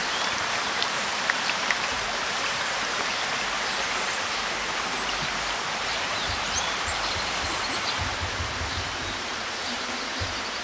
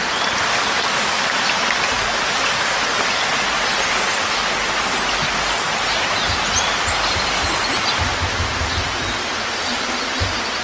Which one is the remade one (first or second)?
first